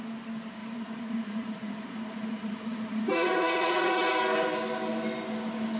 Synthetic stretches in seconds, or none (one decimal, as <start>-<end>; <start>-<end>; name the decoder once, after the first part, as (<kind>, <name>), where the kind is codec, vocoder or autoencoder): 0.6-4.1 (vocoder, Vocos)